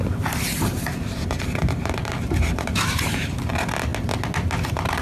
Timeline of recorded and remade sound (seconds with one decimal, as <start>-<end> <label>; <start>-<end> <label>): 0.0-0.5 recorded; 0.5-3.5 remade; 3.5-5.0 recorded